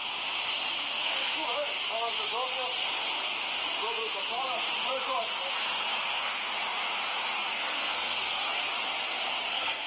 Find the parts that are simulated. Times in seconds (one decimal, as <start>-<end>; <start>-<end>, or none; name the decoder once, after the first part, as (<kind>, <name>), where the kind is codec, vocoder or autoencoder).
0.7-1.3 (codec, SNAC); 6.0-6.4; 7.5-8.4; 9.5-9.9